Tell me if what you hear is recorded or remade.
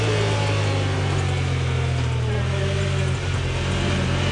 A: recorded